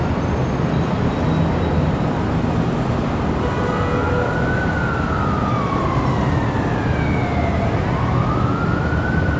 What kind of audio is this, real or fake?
real